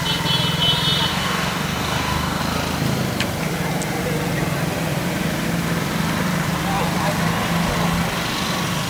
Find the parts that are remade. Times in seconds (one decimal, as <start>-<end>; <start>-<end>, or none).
1.1-2.4